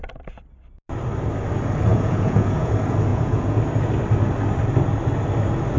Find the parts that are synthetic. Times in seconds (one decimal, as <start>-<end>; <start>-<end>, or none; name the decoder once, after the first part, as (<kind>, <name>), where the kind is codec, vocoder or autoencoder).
1.9-2.7 (vocoder, Vocos); 3.1-3.6